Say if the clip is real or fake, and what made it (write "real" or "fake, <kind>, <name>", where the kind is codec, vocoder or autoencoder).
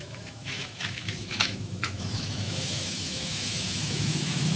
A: fake, autoencoder, DAC-VAE